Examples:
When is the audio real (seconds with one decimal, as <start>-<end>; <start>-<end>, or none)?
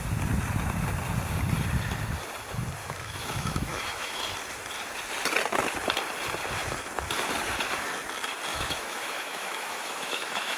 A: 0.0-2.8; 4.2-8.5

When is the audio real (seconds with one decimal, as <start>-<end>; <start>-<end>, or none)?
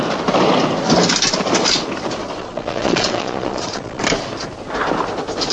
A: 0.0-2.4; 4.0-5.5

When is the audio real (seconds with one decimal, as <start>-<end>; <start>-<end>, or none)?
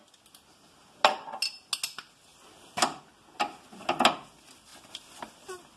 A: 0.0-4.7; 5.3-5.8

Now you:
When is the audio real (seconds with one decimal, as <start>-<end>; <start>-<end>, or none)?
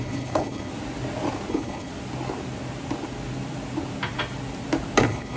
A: 0.7-1.5; 1.9-5.0